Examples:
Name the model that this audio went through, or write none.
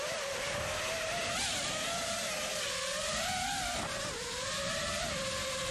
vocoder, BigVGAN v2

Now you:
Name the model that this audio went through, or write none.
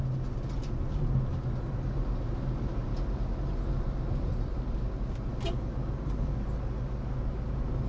none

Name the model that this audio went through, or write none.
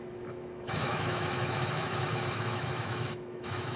autoencoder, DAC-VAE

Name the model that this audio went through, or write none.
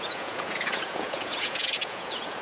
vocoder, Vocos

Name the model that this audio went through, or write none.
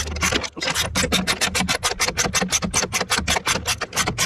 none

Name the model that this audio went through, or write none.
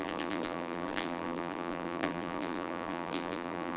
vocoder, BigVGAN v2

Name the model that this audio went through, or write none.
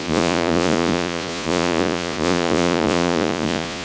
vocoder, Vocos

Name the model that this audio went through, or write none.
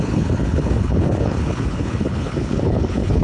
codec, HILCodec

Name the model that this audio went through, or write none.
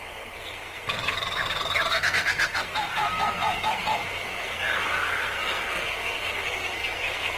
codec, SNAC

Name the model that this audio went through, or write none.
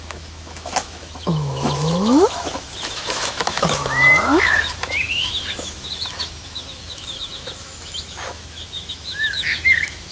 autoencoder, DAC-VAE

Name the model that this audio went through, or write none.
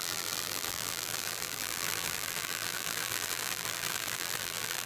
vocoder, BigVGAN v2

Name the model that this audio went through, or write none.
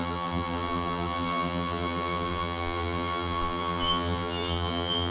vocoder, BigVGAN v2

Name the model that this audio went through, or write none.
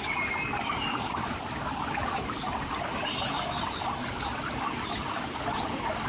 none